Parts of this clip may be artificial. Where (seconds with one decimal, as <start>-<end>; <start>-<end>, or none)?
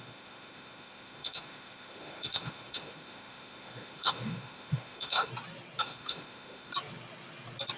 0.0-5.3; 5.8-6.7